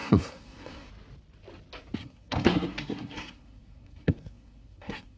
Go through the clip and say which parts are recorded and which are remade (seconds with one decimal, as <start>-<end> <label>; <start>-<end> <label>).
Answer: 0.0-0.9 remade; 0.9-2.0 recorded; 2.0-5.2 remade